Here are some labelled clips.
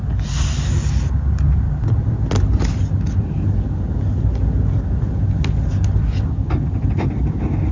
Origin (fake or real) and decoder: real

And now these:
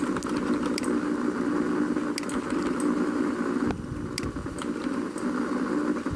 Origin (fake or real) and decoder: real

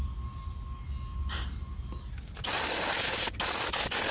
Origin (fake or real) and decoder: real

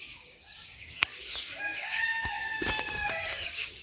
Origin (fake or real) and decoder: fake, codec, DAC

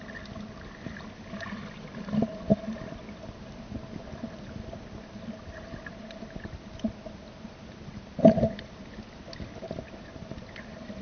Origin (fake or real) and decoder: real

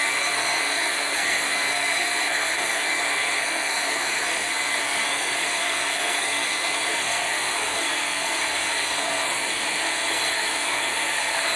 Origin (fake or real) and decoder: fake, codec, SNAC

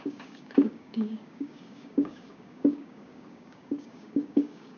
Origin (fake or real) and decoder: fake, codec, DAC